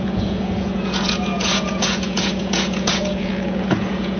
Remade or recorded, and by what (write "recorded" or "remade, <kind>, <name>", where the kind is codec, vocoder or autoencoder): remade, vocoder, Vocos